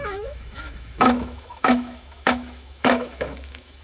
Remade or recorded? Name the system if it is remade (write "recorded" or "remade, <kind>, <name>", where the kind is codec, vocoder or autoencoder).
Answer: remade, autoencoder, DAC-VAE